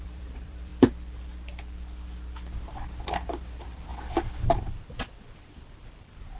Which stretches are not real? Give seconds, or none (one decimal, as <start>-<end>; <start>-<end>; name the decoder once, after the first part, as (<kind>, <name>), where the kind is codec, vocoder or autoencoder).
0.0-0.7 (vocoder, BigVGAN v2); 3.4-3.9; 4.5-6.4